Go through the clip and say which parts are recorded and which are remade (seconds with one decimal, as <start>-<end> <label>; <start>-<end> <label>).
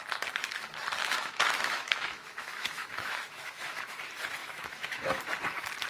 0.0-1.0 recorded; 1.0-4.0 remade; 4.0-4.4 recorded; 4.4-5.2 remade; 5.2-5.9 recorded